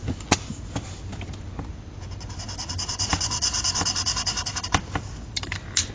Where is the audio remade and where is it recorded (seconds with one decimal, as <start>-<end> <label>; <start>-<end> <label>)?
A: 0.0-5.9 recorded